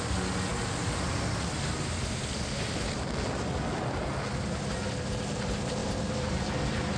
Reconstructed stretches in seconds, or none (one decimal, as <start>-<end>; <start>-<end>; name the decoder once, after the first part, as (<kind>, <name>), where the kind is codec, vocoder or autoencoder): none